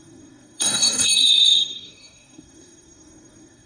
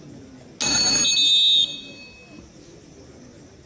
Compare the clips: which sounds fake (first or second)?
first